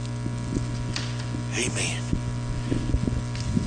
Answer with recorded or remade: recorded